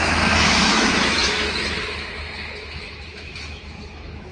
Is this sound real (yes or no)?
no